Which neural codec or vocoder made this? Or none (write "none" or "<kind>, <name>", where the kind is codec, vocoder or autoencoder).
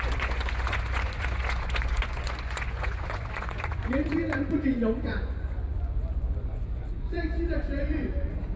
vocoder, Vocos